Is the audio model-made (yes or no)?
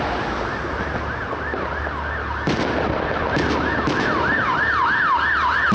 no